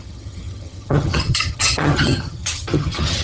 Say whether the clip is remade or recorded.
remade